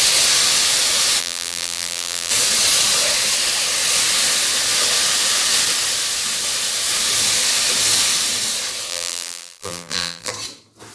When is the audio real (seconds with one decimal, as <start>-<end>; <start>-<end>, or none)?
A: 0.0-1.2; 2.3-8.9; 10.3-10.9